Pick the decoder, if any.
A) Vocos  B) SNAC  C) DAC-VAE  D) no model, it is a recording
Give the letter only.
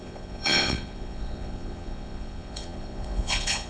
A